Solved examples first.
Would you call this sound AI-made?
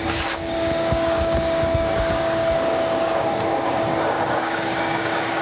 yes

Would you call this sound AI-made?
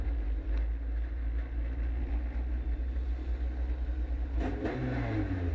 no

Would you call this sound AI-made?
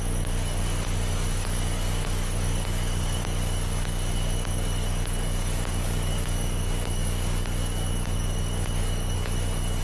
yes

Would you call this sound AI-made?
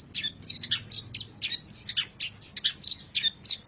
no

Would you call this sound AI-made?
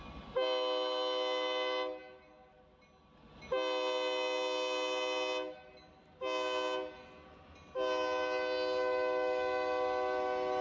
no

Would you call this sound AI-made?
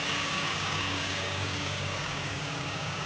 yes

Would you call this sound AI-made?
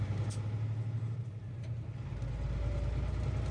no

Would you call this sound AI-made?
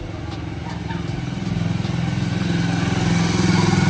no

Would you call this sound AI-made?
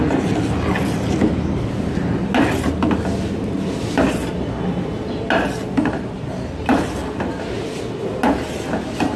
no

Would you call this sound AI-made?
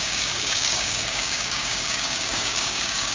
yes